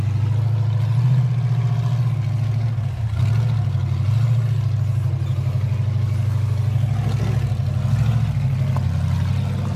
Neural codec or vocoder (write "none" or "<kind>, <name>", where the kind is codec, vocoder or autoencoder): none